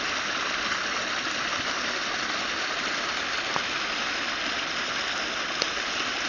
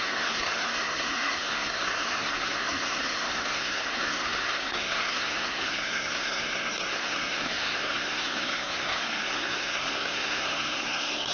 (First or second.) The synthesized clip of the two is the second